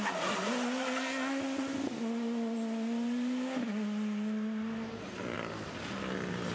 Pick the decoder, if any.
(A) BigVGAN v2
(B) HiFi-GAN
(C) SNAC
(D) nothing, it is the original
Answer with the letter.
D